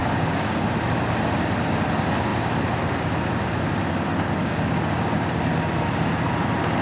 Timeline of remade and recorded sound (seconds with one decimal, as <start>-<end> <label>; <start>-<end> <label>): 0.0-0.6 remade; 0.6-4.4 recorded; 4.4-5.4 remade; 5.4-6.8 recorded